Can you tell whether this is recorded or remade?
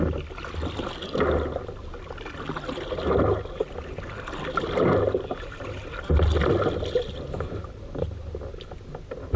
recorded